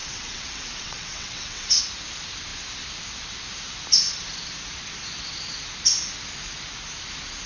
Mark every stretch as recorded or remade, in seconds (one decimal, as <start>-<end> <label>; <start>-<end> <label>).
0.0-1.8 remade; 1.8-7.5 recorded